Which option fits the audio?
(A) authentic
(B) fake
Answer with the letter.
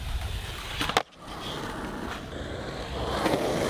A